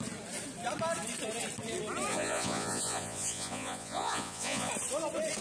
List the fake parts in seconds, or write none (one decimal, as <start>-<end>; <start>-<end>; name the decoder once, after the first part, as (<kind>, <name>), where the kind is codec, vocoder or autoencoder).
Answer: 2.1-4.7 (vocoder, Vocos)